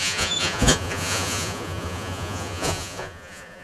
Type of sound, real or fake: fake